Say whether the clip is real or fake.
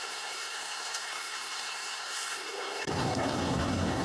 fake